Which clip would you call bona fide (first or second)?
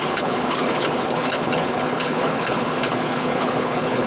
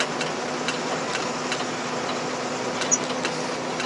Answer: second